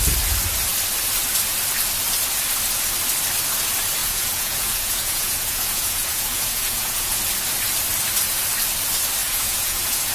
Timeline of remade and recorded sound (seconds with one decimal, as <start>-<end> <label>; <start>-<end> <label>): 0.0-4.0 recorded; 4.0-7.2 remade; 7.2-9.2 recorded; 9.2-10.1 remade